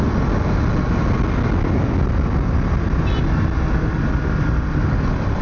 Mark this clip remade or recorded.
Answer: recorded